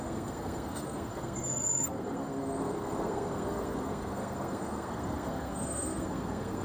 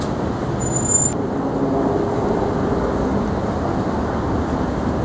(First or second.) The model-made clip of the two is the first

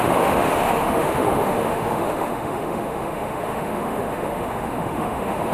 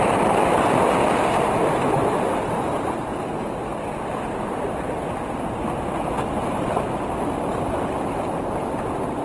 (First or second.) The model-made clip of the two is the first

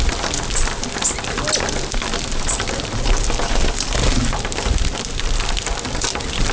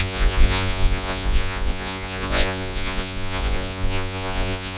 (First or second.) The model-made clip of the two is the second